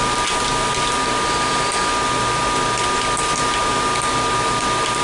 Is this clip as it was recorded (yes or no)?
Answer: yes